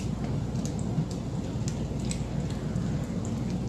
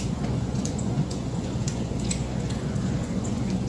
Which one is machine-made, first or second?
second